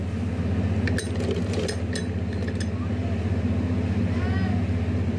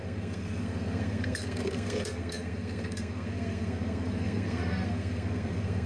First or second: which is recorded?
first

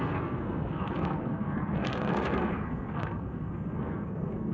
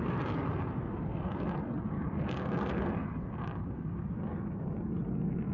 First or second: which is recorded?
second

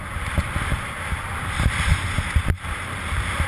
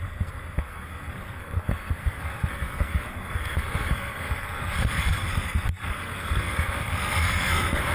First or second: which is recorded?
first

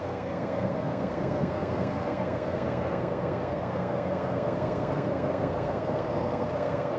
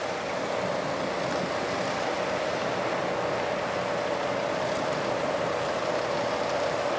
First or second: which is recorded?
second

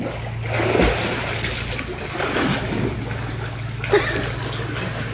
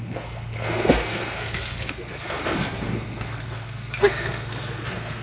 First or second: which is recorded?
first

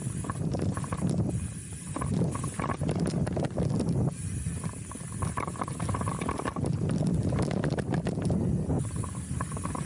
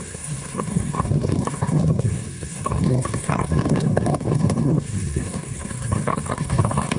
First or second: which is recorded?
first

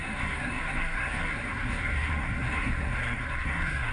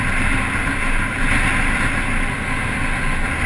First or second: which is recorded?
second